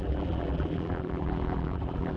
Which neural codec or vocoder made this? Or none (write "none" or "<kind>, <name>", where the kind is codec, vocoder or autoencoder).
vocoder, BigVGAN v2